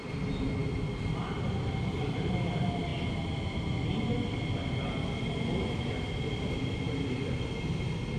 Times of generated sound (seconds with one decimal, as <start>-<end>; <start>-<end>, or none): none